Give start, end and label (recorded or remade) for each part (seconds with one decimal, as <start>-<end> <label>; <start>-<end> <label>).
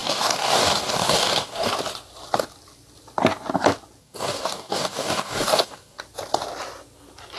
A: 0.0-1.7 remade; 1.7-4.0 recorded; 4.0-6.0 remade; 6.0-7.4 recorded